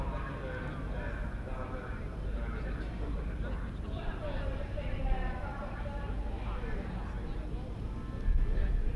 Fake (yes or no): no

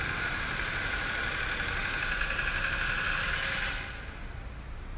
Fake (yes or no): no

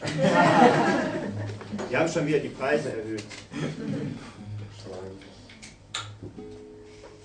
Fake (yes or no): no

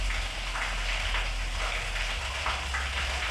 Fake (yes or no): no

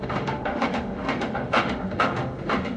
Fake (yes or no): yes